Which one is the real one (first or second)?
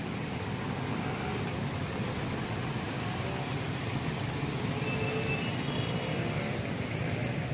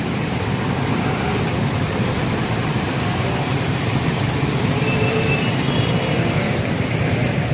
first